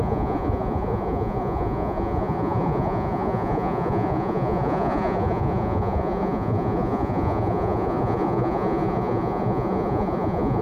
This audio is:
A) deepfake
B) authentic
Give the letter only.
A